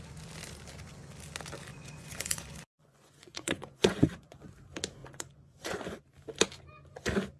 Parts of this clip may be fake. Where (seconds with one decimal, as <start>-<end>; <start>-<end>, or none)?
1.7-4.5; 5.0-6.0